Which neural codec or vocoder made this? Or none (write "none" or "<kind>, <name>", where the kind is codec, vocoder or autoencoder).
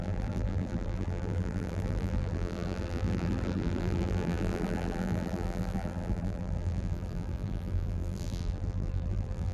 vocoder, BigVGAN v2